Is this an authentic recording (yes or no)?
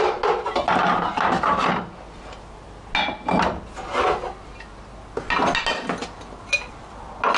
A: yes